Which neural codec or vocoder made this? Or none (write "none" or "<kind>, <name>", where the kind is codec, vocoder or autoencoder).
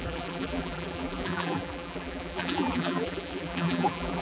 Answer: vocoder, BigVGAN v2